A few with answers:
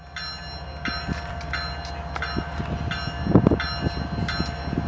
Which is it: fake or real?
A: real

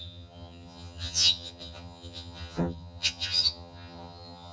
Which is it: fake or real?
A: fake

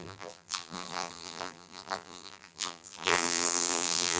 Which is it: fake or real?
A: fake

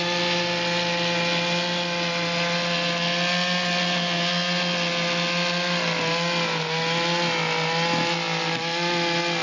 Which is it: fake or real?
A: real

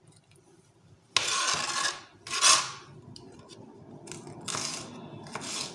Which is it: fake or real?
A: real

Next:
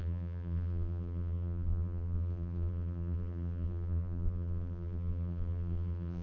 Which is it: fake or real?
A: fake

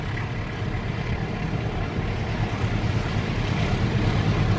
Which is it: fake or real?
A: fake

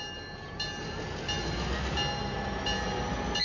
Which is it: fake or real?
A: real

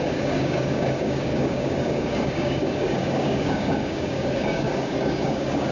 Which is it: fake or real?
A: fake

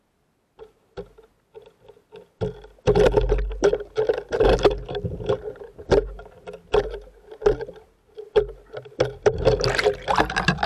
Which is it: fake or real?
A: real